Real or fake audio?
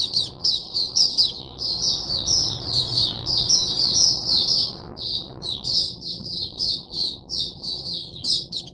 fake